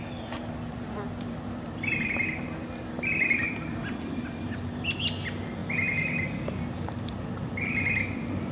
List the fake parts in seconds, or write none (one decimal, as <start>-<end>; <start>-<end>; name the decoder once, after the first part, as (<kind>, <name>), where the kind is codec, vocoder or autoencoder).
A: none